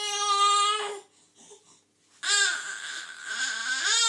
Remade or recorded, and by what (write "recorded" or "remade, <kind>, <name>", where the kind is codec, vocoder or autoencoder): recorded